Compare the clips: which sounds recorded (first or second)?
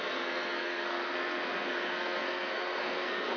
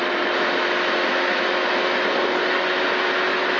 second